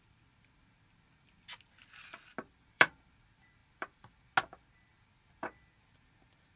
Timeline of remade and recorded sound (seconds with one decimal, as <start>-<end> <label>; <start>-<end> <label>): 0.0-2.3 recorded; 2.3-2.9 remade; 2.9-3.6 recorded; 3.6-4.2 remade; 4.2-6.6 recorded